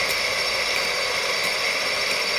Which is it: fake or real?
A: fake